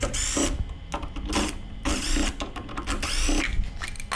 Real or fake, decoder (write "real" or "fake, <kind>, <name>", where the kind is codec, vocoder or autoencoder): real